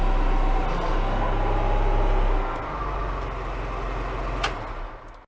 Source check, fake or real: real